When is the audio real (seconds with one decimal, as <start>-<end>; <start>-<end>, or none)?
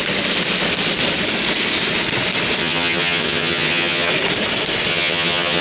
0.0-2.6; 4.1-4.9